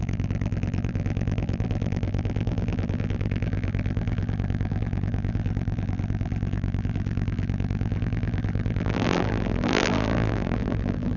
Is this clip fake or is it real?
fake